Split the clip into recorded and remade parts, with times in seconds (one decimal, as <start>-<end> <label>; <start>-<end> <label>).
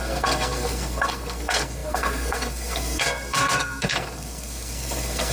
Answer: 0.0-5.3 remade